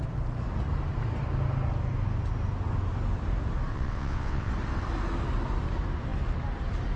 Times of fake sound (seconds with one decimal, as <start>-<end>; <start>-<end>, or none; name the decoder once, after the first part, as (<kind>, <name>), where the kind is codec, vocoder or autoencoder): 3.7-4.5 (vocoder, WaveNeXt)